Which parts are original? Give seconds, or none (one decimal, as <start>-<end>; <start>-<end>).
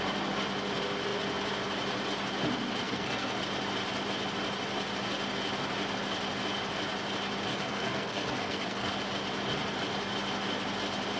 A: 0.0-2.8; 3.4-7.5; 8.9-11.2